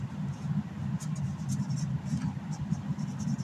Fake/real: real